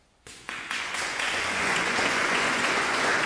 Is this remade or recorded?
remade